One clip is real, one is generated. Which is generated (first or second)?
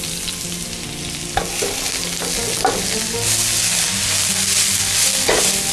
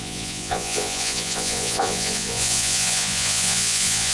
second